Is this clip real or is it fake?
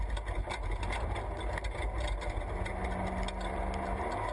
real